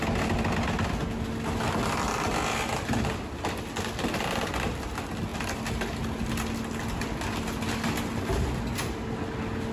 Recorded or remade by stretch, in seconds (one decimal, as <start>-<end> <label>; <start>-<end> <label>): 0.0-9.7 recorded